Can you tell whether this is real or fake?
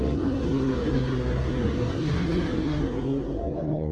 fake